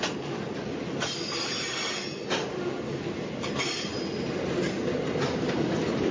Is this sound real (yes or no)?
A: yes